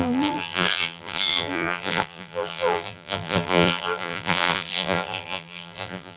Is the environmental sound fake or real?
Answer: fake